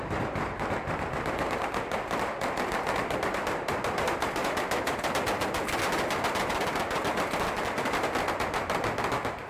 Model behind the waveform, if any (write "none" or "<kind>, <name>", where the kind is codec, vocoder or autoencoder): none